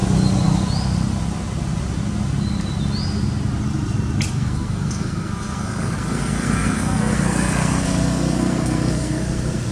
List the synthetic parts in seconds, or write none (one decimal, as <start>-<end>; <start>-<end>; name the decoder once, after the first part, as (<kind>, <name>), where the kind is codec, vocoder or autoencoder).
4.3-9.7 (codec, SNAC)